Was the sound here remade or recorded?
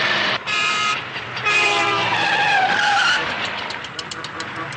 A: remade